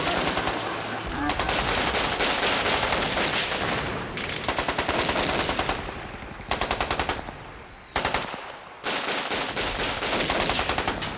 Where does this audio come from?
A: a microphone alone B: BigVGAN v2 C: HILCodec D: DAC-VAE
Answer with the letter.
A